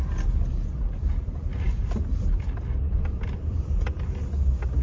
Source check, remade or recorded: remade